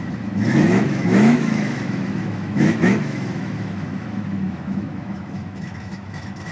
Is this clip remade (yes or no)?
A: yes